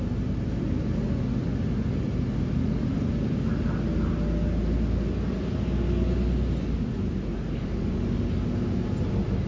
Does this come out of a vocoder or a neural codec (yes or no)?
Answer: no